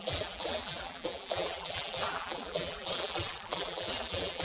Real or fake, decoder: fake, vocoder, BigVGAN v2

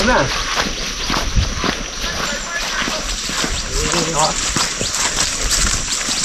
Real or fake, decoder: real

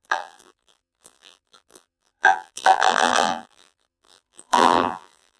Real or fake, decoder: fake, vocoder, BigVGAN v2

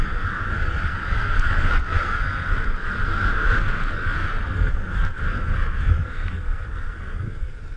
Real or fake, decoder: fake, codec, SNAC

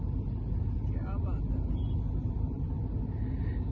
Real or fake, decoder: real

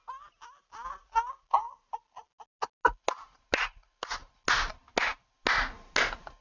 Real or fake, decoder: real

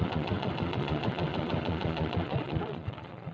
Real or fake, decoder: fake, vocoder, Vocos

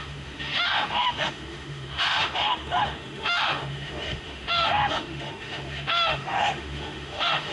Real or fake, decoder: fake, autoencoder, DAC-VAE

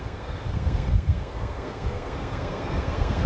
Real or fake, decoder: fake, codec, SNAC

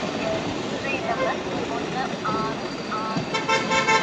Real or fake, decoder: real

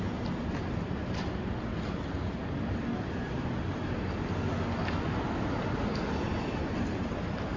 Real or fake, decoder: real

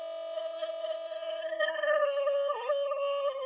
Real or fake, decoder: fake, codec, SNAC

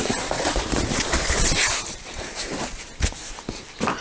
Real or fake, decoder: fake, vocoder, BigVGAN v2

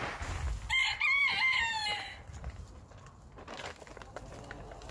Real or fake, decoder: real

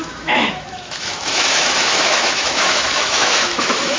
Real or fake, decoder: fake, autoencoder, DAC-VAE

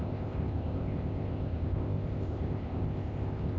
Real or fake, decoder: fake, codec, ZipCodec